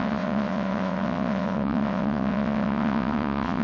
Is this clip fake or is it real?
fake